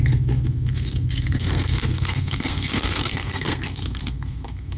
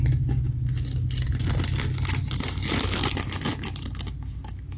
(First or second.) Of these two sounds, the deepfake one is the first